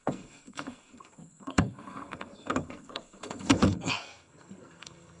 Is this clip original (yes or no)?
no